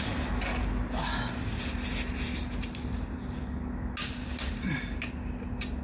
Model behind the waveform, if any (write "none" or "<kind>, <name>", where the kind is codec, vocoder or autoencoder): none